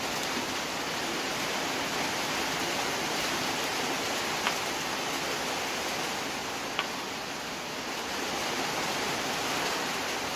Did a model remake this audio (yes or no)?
no